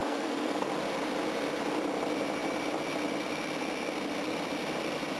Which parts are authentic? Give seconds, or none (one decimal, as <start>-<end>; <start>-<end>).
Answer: 0.7-5.2